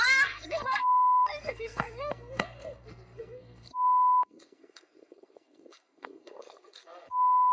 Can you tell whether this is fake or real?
fake